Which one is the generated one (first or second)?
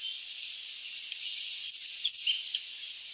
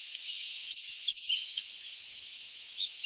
second